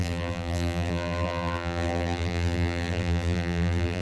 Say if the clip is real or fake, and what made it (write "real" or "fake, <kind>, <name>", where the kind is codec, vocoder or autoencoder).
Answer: fake, vocoder, BigVGAN v2